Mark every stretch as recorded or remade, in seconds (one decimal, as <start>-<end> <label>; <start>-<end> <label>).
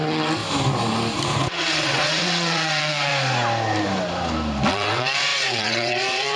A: 0.0-0.4 remade; 0.4-1.4 recorded; 1.4-3.1 remade; 3.1-4.7 recorded; 4.7-6.4 remade